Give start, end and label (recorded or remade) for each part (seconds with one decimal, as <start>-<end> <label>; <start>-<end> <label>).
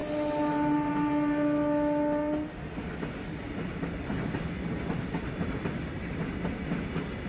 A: 0.0-7.3 recorded